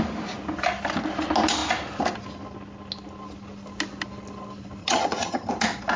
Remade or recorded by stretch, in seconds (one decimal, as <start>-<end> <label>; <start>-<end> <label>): 0.0-4.8 recorded; 4.8-5.5 remade; 5.5-6.0 recorded